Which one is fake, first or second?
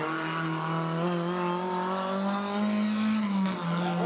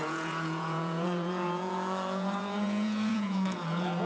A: second